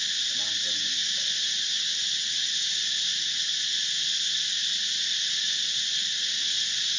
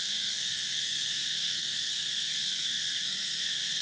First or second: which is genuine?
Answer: first